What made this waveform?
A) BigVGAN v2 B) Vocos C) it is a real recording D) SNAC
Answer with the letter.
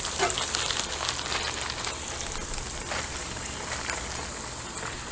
C